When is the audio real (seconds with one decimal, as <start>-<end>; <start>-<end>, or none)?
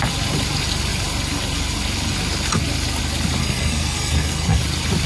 0.0-3.4; 4.6-5.1